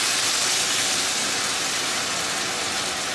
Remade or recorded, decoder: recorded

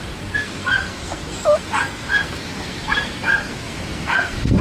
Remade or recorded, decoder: remade, codec, SNAC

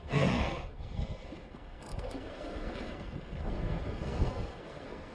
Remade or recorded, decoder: remade, codec, SNAC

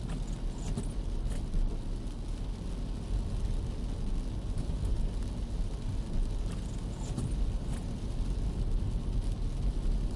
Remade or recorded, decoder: recorded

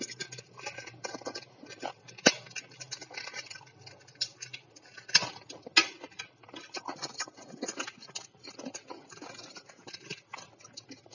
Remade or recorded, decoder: recorded